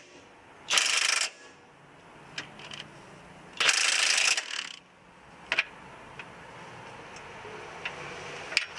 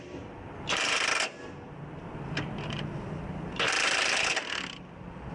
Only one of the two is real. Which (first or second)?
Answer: first